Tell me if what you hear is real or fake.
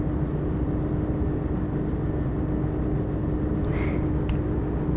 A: real